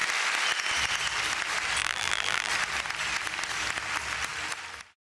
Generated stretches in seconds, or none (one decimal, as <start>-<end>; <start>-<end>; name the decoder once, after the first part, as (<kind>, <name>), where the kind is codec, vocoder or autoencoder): 1.8-2.5 (vocoder, BigVGAN v2)